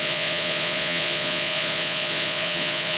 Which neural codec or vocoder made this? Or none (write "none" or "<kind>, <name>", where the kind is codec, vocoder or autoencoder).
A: vocoder, Vocos